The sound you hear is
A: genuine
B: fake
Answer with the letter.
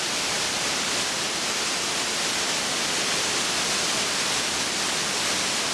A